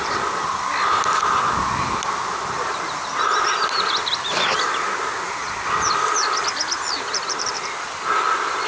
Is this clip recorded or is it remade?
recorded